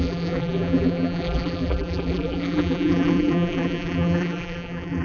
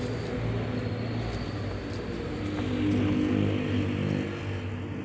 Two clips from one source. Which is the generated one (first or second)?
first